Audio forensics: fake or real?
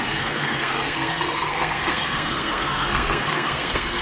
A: fake